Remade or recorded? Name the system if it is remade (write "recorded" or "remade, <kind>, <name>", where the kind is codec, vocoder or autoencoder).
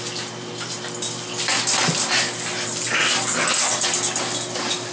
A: recorded